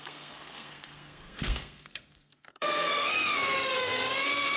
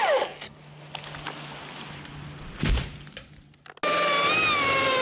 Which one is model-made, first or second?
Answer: first